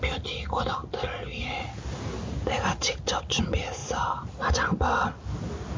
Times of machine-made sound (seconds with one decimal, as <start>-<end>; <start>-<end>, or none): none

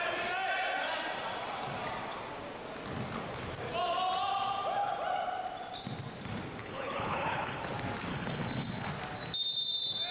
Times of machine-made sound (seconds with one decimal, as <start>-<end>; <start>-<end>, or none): 6.6-7.6; 8.1-8.9

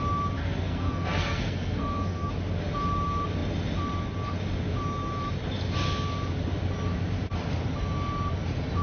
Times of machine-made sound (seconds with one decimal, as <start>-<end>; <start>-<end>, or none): 0.4-2.3

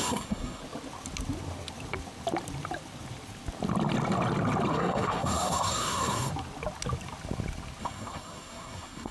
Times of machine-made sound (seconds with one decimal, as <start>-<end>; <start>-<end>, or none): 0.0-0.6; 4.7-6.3; 7.8-9.1

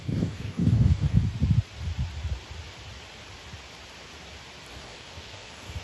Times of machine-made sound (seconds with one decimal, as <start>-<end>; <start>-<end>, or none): 0.0-1.2; 4.7-5.8

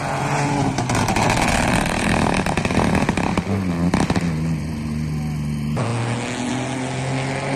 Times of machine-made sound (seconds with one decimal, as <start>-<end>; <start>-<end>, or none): none

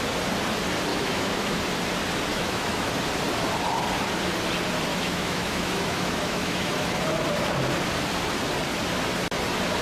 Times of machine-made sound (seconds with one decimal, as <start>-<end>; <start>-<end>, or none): 0.9-1.6; 2.3-2.9; 4.9-6.7